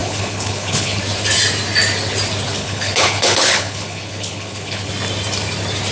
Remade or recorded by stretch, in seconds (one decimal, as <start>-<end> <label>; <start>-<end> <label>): 0.0-1.0 remade; 1.0-2.6 recorded; 2.6-4.9 remade; 4.9-5.9 recorded